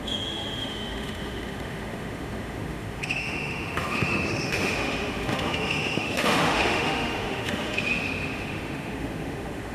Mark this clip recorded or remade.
remade